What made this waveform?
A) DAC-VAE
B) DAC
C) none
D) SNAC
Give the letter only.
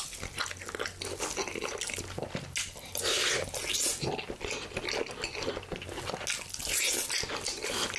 C